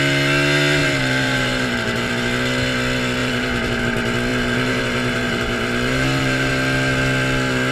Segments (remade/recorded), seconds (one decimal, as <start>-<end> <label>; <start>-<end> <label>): 0.0-0.8 recorded; 0.8-2.1 remade; 2.1-3.2 recorded; 3.2-3.8 remade; 3.8-4.3 recorded; 4.3-6.5 remade; 6.5-7.7 recorded